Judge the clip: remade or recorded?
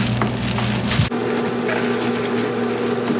recorded